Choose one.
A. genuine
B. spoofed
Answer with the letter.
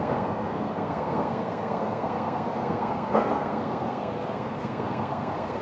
B